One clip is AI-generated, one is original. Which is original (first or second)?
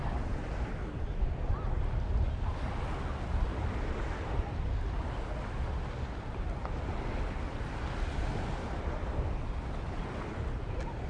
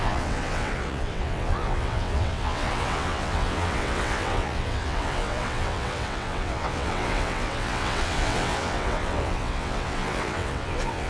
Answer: first